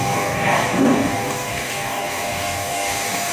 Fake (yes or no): yes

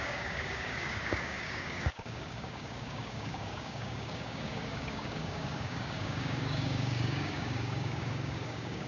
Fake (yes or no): yes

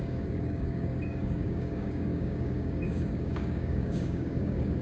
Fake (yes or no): yes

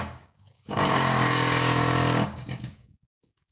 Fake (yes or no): yes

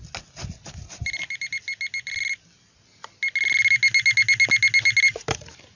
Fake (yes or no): no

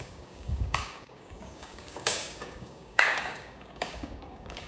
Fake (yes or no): yes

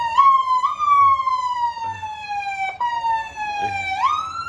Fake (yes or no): no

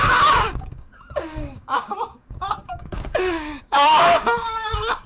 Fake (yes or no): yes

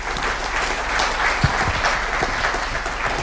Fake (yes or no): no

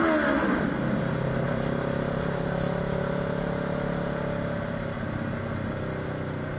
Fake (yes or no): no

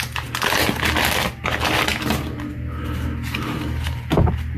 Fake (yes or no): no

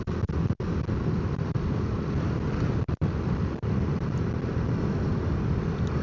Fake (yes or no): no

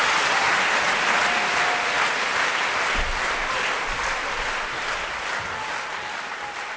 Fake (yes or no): no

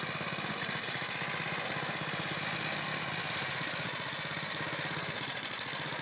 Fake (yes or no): no